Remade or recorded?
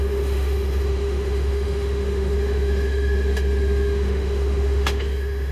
remade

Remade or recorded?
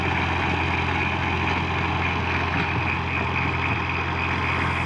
recorded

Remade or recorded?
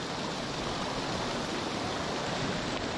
recorded